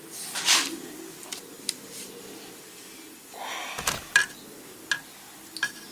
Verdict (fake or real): real